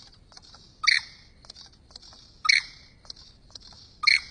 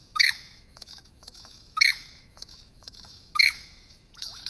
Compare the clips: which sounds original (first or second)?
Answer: first